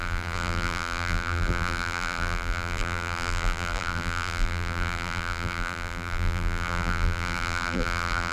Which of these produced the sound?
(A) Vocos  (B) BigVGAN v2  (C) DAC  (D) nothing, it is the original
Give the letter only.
B